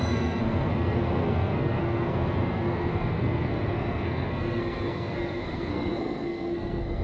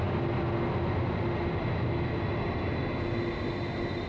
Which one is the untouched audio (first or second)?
second